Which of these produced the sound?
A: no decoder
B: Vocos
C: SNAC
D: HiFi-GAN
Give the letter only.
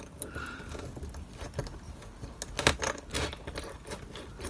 A